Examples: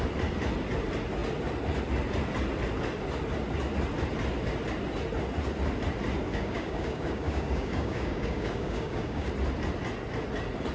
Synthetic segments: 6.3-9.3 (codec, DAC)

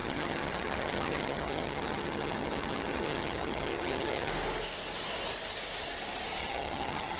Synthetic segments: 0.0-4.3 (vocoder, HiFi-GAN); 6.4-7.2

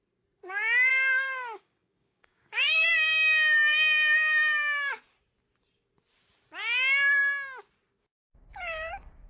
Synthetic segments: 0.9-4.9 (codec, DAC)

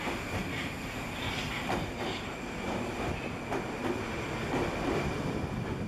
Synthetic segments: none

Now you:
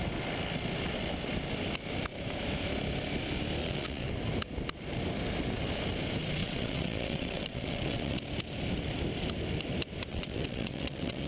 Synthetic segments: 3.6-4.1 (vocoder, WaveNeXt); 6.4-8.2; 10.1-11.3